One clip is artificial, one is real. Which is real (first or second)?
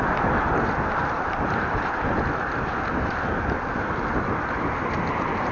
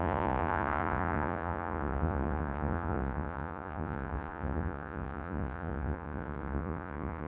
first